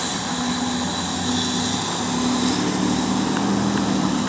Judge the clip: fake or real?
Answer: real